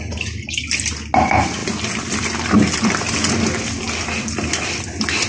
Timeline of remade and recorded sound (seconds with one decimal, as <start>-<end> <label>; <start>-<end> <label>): 0.0-1.6 recorded; 1.6-3.4 remade; 3.4-5.3 recorded